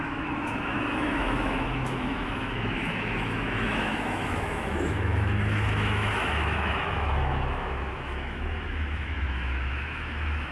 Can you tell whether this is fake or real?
fake